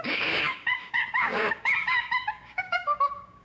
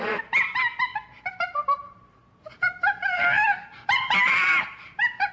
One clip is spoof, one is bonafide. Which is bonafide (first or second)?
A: second